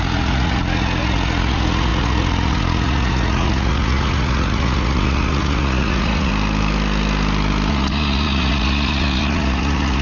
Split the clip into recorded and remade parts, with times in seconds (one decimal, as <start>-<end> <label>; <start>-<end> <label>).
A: 0.0-6.3 remade; 6.3-7.7 recorded; 7.7-10.0 remade